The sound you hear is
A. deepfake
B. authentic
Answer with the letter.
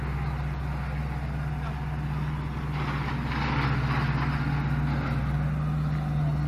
B